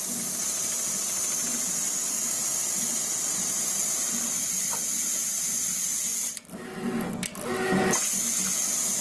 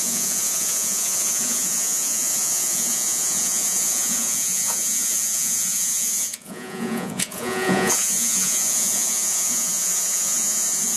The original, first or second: first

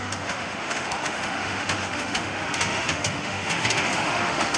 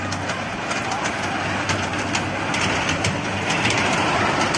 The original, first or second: second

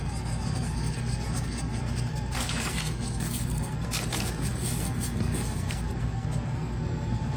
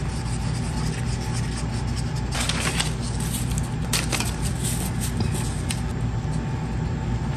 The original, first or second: second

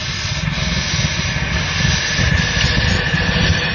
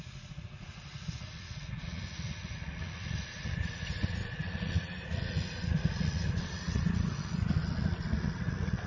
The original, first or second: first